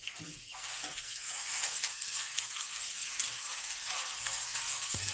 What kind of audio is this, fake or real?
fake